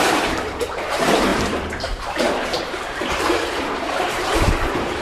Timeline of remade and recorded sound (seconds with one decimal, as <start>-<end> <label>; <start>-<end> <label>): 0.0-5.0 remade